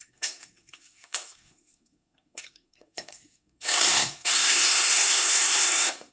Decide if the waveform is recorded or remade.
remade